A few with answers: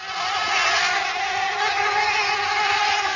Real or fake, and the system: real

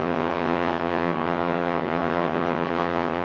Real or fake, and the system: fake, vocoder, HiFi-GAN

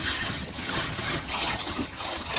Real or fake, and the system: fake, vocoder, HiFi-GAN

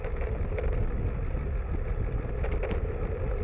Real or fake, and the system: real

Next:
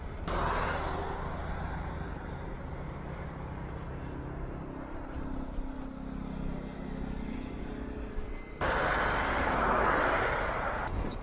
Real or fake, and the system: real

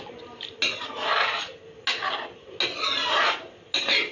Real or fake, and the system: real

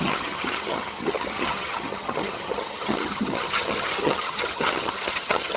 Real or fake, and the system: fake, vocoder, HiFi-GAN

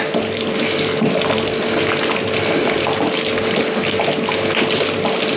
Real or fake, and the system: real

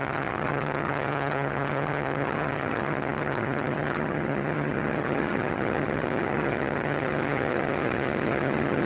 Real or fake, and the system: fake, vocoder, HiFi-GAN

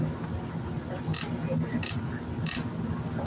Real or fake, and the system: real